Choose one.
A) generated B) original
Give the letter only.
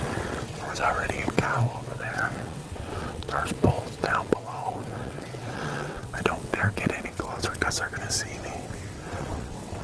A